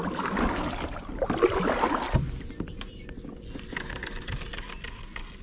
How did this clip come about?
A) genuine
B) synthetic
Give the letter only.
A